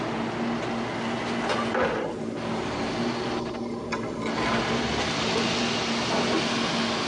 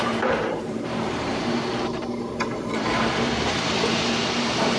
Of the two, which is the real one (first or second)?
first